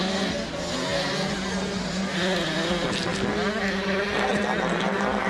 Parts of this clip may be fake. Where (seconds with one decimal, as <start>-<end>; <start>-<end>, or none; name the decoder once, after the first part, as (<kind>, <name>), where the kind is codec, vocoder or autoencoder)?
none